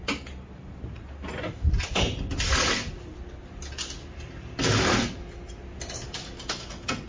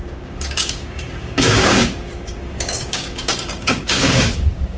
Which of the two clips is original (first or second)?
first